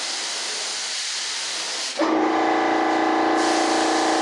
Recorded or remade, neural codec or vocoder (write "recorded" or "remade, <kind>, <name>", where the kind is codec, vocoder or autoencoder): recorded